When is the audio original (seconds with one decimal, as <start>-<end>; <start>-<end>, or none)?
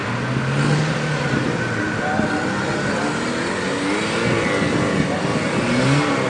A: 0.0-6.3